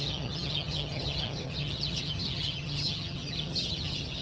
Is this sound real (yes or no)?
no